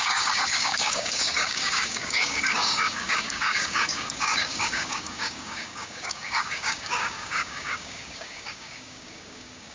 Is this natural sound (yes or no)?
no